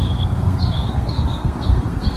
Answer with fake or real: fake